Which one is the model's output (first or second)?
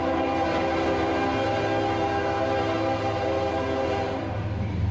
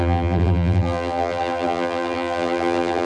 second